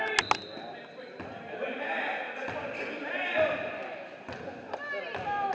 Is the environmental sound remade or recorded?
recorded